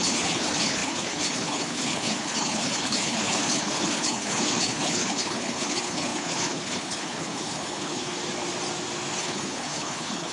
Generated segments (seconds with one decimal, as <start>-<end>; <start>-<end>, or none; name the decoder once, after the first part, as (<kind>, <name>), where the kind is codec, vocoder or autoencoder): 0.0-8.2 (codec, HILCodec); 9.2-10.3